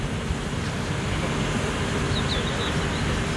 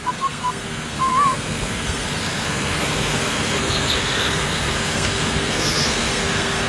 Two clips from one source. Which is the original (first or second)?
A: first